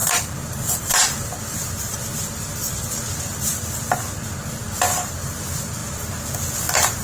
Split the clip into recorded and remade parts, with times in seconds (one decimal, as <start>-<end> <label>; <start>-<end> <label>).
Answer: 0.0-3.5 remade; 3.5-4.6 recorded; 4.6-5.8 remade; 5.8-7.0 recorded